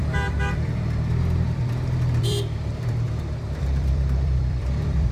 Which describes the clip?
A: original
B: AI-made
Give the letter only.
B